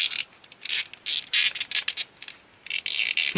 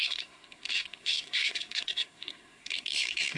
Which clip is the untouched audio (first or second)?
first